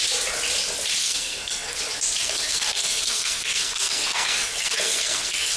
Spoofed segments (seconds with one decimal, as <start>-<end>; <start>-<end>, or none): 1.0-1.8; 2.2-5.6